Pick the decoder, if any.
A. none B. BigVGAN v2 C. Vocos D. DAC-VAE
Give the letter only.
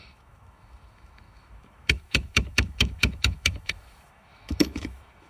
D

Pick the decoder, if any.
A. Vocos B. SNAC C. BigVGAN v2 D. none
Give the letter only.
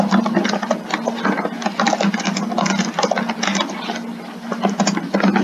D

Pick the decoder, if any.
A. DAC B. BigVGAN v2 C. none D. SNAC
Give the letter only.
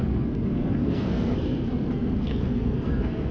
D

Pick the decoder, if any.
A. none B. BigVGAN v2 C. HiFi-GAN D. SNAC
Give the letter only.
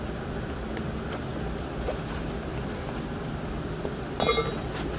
A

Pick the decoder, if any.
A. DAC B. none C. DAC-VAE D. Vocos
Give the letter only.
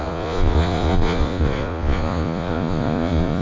D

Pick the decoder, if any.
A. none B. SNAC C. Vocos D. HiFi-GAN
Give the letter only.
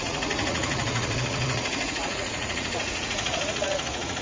C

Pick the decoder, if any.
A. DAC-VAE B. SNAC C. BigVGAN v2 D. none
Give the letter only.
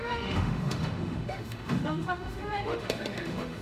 A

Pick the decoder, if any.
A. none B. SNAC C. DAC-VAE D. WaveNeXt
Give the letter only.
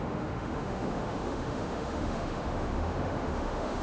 C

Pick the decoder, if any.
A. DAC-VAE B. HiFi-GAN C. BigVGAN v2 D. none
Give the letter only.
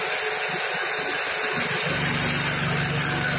D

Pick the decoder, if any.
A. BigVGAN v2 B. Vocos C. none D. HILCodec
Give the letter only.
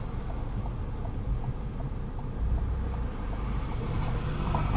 C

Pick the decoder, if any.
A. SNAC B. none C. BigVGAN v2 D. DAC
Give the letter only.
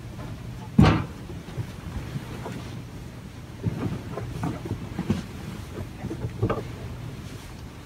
C